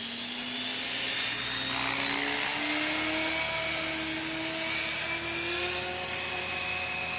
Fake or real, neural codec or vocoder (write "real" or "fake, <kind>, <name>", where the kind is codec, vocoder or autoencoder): real